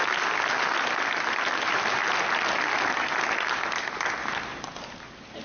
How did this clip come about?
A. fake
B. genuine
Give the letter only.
B